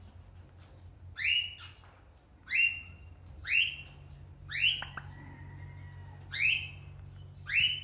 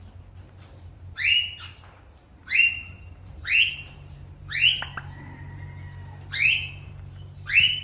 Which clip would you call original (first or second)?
first